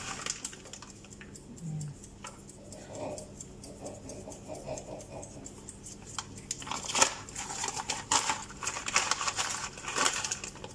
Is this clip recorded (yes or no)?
yes